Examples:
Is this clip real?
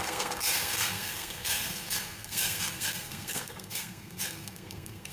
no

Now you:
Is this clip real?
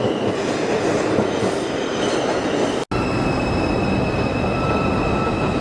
yes